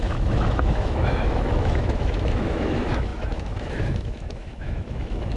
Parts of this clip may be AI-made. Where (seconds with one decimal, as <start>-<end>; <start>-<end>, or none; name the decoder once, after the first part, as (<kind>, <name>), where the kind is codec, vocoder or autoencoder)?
0.0-5.4 (autoencoder, DAC-VAE)